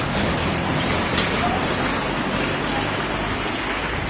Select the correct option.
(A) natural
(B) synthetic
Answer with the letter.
A